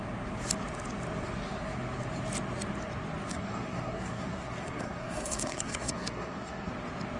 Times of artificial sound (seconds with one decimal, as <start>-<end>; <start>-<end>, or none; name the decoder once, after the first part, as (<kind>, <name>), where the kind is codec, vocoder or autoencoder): 3.3-6.7 (codec, SNAC)